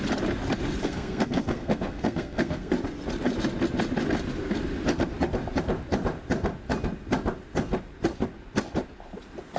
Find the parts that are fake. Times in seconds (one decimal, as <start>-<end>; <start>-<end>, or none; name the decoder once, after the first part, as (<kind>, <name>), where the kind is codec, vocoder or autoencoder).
0.8-2.7 (codec, SNAC)